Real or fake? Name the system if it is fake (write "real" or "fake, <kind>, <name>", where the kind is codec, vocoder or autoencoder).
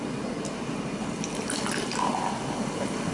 real